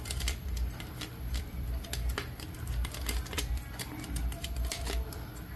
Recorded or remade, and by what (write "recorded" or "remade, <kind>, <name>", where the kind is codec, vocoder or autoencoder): remade, vocoder, BigVGAN v2